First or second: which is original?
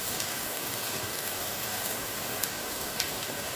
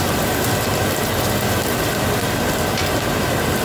second